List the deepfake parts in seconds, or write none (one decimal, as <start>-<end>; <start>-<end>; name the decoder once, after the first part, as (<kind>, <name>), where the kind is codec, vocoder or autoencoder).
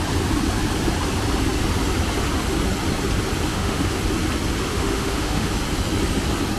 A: 3.5-4.0 (autoencoder, DAC-VAE); 4.7-5.5